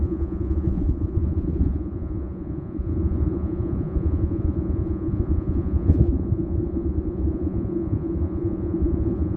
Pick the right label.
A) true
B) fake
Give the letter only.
B